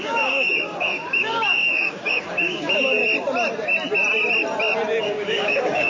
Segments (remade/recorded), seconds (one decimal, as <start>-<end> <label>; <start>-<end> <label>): 0.0-3.0 remade; 3.0-5.0 recorded; 5.0-5.9 remade